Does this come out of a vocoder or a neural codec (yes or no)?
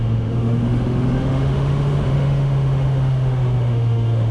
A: yes